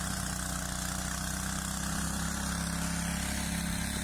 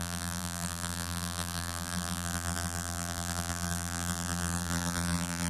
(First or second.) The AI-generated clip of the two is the second